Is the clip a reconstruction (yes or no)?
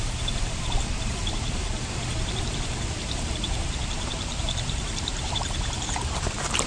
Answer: yes